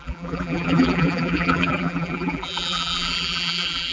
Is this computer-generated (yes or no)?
yes